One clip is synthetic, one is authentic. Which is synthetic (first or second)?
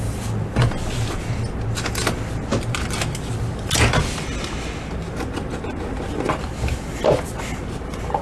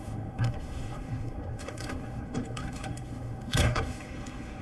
second